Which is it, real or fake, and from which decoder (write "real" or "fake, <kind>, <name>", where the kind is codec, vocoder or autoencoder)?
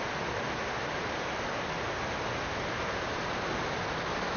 real